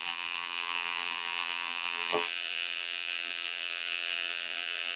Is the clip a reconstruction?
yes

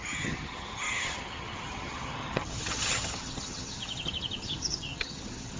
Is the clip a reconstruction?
yes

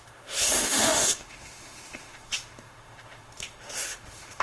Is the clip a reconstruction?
yes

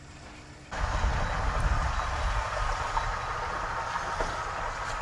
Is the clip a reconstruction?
no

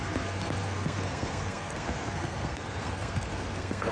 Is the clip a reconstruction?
yes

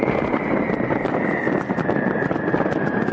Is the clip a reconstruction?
no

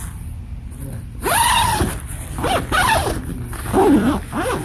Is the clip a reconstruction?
no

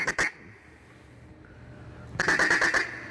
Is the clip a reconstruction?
no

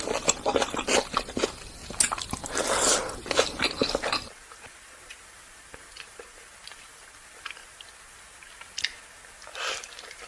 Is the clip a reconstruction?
no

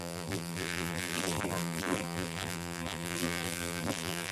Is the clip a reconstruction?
yes